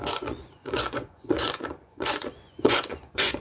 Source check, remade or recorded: remade